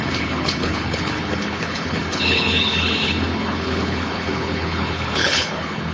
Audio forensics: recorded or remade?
remade